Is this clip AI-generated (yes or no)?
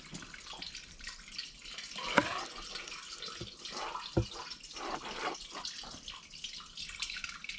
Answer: no